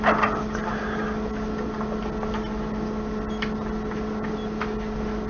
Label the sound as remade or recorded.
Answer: recorded